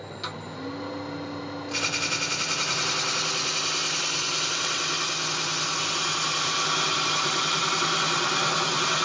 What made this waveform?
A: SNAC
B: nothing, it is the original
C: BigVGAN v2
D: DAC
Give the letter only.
B